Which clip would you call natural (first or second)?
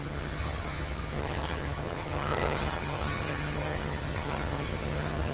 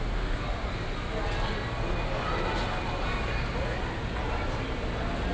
second